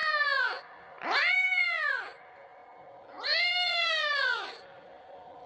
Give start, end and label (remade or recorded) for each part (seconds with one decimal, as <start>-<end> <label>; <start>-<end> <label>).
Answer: 0.0-1.9 recorded; 1.9-2.6 remade; 2.6-3.9 recorded; 3.9-5.5 remade